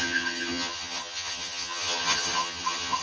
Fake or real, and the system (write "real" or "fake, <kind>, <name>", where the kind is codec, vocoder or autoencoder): fake, vocoder, HiFi-GAN